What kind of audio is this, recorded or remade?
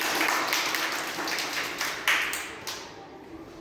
recorded